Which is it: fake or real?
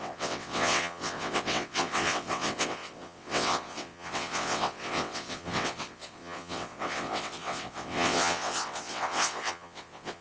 fake